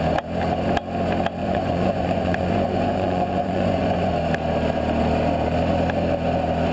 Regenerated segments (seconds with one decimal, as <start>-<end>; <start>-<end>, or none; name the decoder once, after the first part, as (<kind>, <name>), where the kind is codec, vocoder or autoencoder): 1.4-4.1 (vocoder, Vocos)